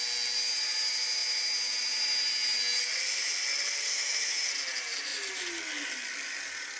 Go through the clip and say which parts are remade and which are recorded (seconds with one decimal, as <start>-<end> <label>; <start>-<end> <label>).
0.0-3.9 recorded; 3.9-4.5 remade; 4.5-6.8 recorded